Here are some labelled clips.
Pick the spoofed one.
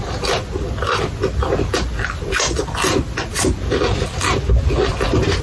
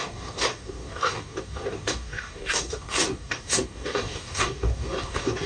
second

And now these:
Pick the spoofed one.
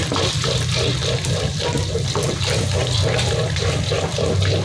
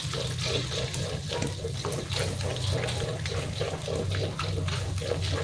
first